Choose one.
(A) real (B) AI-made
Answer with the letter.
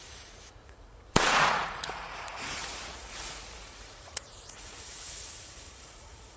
B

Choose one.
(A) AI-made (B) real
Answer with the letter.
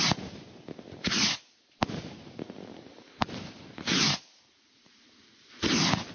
B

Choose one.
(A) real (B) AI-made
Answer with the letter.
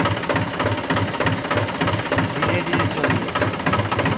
A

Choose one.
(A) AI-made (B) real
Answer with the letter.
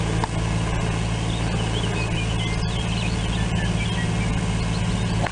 B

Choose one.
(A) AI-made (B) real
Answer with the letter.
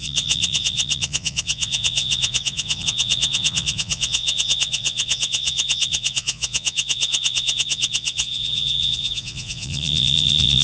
A